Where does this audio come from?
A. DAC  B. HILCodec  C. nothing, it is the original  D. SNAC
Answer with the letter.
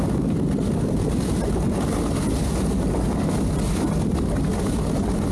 C